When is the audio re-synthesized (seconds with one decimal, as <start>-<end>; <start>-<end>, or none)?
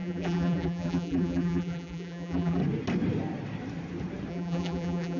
0.0-2.6; 4.3-5.2